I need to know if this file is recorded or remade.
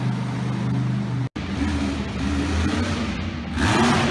recorded